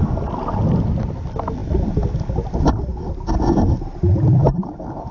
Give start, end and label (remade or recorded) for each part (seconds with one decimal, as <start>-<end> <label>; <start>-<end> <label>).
0.0-5.1 recorded